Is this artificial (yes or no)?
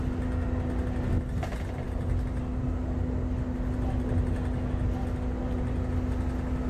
no